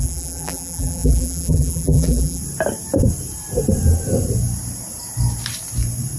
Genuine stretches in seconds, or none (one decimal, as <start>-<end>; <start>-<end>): 2.4-6.2